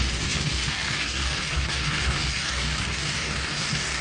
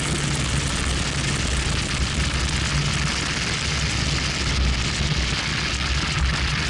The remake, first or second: first